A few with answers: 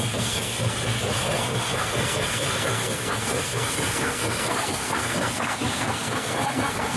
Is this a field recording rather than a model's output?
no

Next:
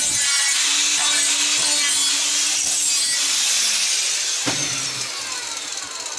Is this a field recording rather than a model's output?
yes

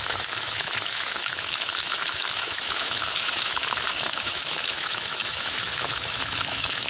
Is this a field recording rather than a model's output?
no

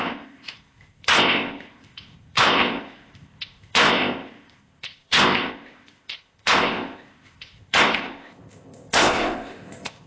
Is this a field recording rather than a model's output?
no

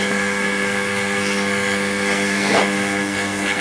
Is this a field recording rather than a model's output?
no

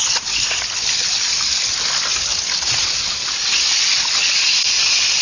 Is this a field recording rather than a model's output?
yes